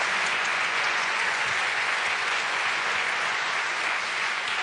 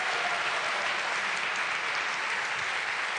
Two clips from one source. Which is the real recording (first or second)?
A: second